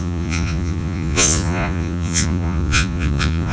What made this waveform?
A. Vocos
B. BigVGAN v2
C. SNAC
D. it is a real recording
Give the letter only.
A